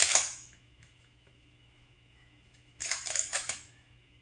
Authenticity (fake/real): fake